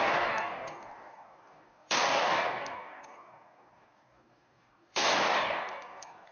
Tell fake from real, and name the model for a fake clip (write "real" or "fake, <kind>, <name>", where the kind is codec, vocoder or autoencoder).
fake, codec, DAC